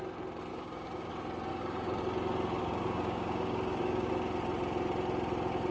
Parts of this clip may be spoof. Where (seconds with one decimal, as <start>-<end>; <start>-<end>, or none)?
0.5-1.1; 1.5-2.0; 2.6-4.1